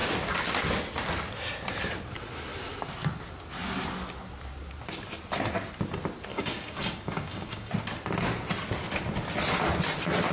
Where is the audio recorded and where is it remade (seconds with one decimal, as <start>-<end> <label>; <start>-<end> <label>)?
0.0-6.3 recorded; 6.3-7.7 remade; 7.7-10.3 recorded